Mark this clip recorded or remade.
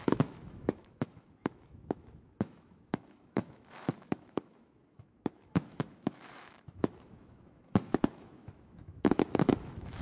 remade